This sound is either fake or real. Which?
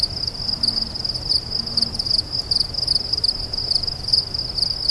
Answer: real